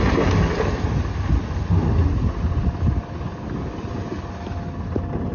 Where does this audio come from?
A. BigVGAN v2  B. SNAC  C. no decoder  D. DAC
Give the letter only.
C